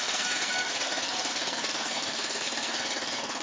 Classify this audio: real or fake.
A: fake